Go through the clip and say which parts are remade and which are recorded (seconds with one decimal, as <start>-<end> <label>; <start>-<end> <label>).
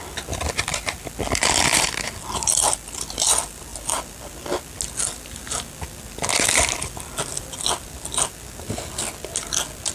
0.0-1.7 recorded; 1.7-3.3 remade; 3.3-9.9 recorded